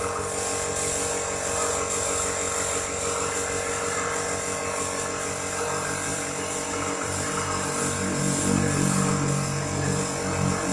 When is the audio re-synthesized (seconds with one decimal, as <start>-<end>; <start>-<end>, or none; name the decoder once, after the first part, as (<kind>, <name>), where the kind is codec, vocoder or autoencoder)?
6.1-8.2 (vocoder, BigVGAN v2)